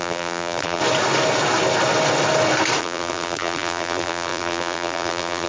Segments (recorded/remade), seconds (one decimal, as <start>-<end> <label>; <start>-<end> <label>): 0.0-0.8 remade; 0.8-2.8 recorded; 2.8-5.5 remade